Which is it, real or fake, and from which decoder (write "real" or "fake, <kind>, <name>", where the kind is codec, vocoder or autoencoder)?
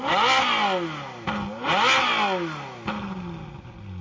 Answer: real